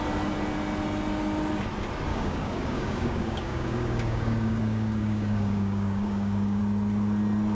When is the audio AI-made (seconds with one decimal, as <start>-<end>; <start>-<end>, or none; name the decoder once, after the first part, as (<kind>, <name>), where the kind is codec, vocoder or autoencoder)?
2.1-6.6 (codec, DAC)